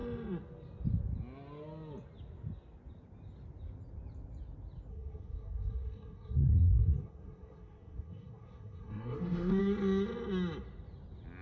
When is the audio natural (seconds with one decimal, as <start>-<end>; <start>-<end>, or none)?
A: 0.0-4.9; 9.6-11.4